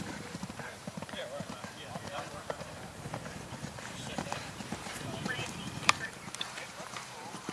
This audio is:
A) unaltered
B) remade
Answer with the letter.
B